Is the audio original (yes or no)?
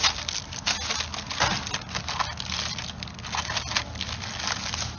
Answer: yes